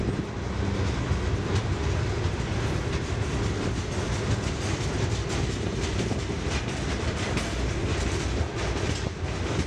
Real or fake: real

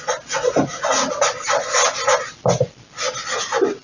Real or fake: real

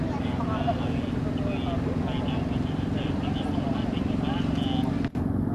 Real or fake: real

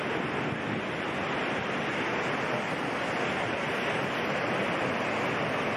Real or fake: real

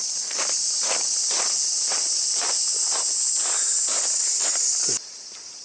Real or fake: real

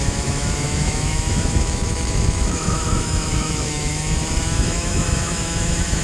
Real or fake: fake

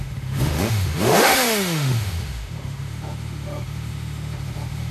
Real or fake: fake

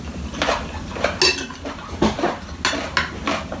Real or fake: real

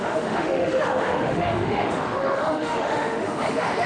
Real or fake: fake